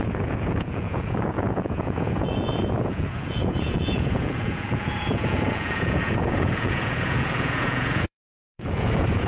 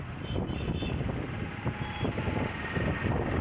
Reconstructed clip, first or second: first